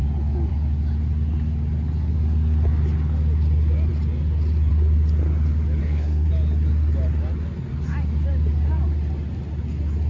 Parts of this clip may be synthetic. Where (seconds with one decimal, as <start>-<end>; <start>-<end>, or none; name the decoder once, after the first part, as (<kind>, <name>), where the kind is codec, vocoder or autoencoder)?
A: 5.8-6.3 (codec, SNAC)